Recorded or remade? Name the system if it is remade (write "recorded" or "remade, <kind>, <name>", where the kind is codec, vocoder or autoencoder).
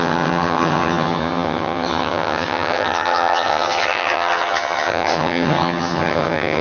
remade, vocoder, HiFi-GAN